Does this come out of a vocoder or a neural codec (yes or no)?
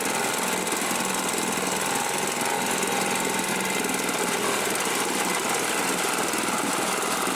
no